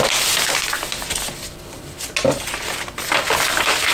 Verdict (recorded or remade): recorded